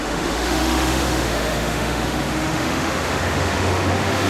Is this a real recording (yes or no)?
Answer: no